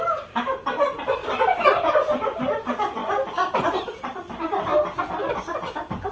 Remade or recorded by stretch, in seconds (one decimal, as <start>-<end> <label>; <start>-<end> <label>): 0.0-1.2 remade; 1.2-1.9 recorded; 1.9-3.0 remade; 3.0-3.6 recorded; 3.6-4.7 remade; 4.7-5.4 recorded; 5.4-6.1 remade